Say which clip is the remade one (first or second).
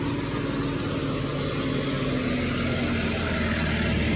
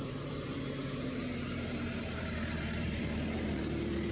second